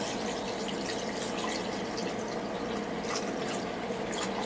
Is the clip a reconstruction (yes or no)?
no